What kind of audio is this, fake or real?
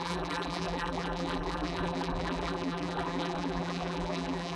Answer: fake